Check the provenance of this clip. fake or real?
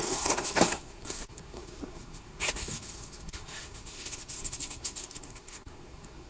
fake